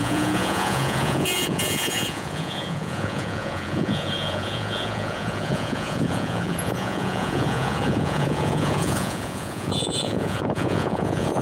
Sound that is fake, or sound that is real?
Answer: fake